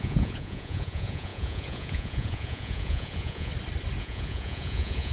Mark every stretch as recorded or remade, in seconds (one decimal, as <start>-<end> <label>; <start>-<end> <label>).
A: 0.0-3.5 remade; 3.5-4.0 recorded; 4.0-5.1 remade